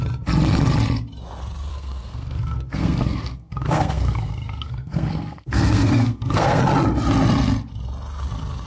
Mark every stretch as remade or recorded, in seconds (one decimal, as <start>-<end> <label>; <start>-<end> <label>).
0.0-1.7 recorded; 1.7-6.6 remade; 6.6-8.7 recorded